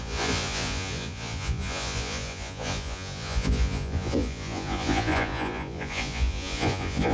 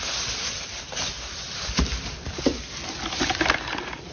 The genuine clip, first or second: second